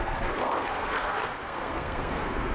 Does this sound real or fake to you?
fake